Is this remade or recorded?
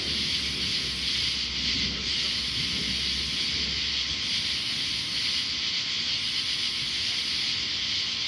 recorded